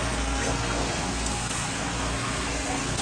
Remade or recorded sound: remade